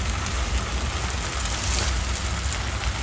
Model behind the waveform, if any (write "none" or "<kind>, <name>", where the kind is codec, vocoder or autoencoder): none